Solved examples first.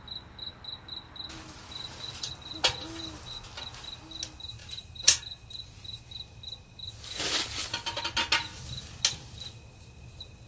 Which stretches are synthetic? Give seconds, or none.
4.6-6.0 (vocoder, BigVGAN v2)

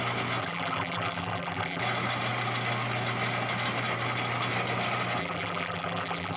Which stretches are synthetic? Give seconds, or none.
0.4-1.8 (vocoder, BigVGAN v2); 5.2-6.4

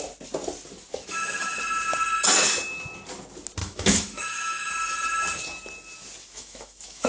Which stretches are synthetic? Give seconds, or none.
0.9-1.6 (autoencoder, DAC-VAE); 3.6-4.7; 6.2-7.1

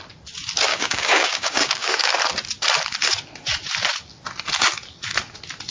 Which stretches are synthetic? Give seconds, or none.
0.7-2.1 (codec, DAC)

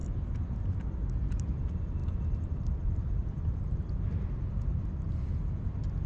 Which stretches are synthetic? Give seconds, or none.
0.0-1.1 (vocoder, BigVGAN v2); 2.0-3.9

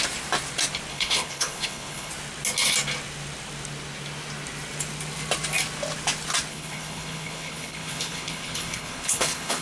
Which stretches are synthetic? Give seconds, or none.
0.9-2.1 (codec, HILCodec); 6.5-9.6

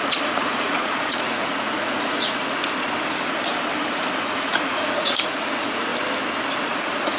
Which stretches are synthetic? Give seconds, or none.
0.0-2.6 (vocoder, Vocos); 4.2-5.9; 6.6-7.2

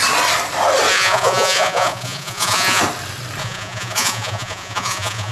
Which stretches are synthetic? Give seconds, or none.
0.9-2.8 (vocoder, Vocos); 3.4-5.3